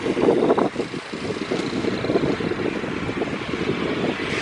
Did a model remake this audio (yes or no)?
no